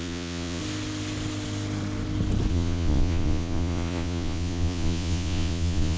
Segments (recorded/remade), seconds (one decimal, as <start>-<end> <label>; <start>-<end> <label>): 0.0-0.6 remade; 0.6-2.5 recorded; 2.5-6.0 remade